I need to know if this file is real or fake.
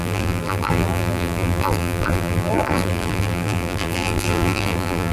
fake